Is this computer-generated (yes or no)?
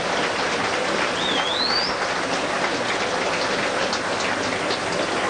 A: no